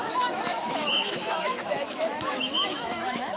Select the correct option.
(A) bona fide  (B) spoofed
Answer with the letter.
B